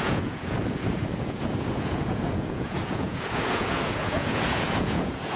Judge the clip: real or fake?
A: fake